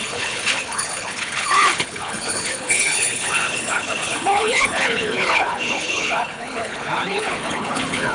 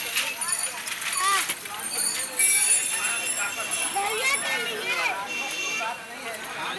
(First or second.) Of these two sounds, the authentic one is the second